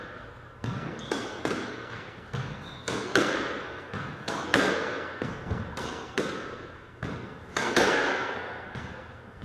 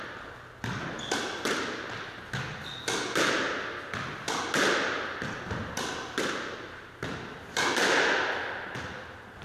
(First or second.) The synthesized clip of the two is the first